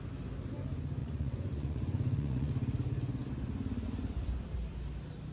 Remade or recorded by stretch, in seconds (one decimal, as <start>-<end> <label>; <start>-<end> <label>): 0.0-1.0 recorded; 1.0-2.5 remade; 2.5-5.3 recorded